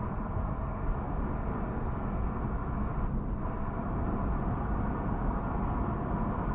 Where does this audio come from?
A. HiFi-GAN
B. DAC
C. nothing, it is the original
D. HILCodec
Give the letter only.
C